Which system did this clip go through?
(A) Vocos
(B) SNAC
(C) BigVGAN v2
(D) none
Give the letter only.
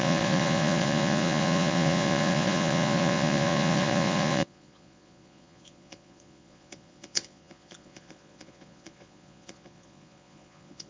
A